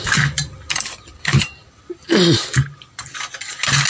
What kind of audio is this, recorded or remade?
recorded